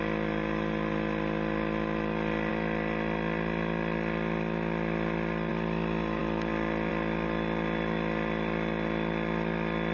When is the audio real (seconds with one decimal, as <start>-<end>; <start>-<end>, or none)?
0.0-9.9